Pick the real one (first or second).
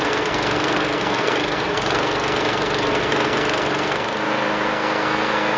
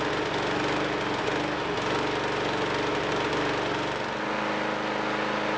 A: second